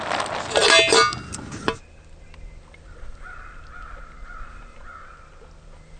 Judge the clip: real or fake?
real